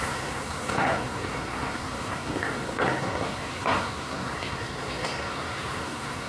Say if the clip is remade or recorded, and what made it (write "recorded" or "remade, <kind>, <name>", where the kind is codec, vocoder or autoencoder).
remade, codec, SNAC